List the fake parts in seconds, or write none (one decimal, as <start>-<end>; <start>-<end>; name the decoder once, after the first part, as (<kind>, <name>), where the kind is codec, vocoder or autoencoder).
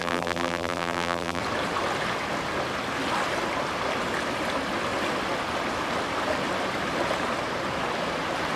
0.0-1.4 (vocoder, BigVGAN v2)